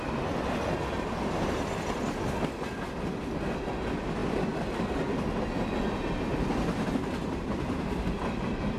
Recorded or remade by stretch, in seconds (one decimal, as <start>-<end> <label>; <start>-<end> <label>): 0.0-8.8 recorded